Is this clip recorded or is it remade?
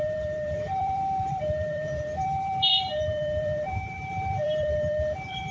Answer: remade